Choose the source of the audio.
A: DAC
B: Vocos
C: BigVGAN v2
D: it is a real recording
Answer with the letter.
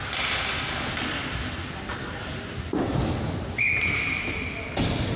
D